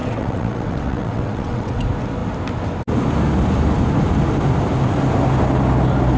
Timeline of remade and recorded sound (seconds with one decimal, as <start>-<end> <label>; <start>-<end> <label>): 0.0-1.8 remade; 1.8-6.2 recorded